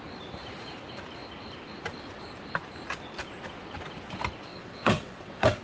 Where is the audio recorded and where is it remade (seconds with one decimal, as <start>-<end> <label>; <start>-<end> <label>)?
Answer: 0.0-4.5 recorded; 4.5-5.6 remade